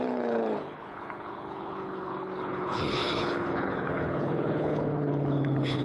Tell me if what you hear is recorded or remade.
remade